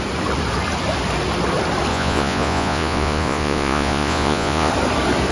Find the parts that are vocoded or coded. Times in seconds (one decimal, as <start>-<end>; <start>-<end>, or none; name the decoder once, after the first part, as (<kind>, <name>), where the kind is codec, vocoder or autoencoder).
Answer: 1.9-4.7 (vocoder, Vocos)